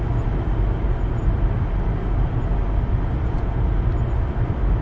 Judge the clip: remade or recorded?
recorded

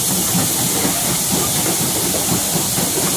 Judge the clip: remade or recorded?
recorded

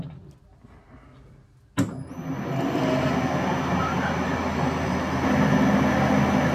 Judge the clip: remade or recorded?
recorded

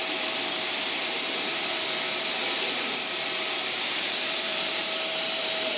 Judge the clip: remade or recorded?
remade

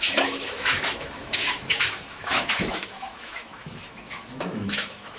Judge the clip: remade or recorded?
remade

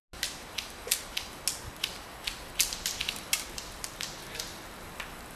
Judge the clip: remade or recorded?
recorded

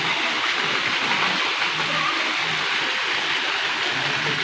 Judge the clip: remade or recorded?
recorded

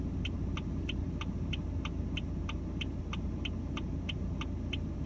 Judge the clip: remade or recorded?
recorded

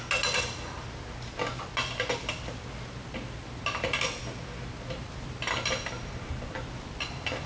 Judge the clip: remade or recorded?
recorded